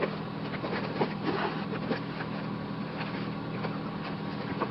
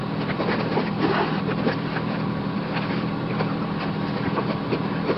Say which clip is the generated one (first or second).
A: second